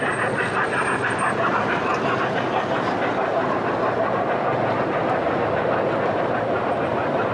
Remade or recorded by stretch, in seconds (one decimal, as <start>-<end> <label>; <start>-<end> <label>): 0.0-7.3 recorded